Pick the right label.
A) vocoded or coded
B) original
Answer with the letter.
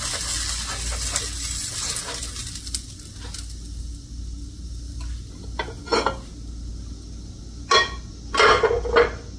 B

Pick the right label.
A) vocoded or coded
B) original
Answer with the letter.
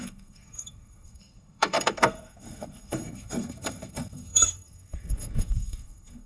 A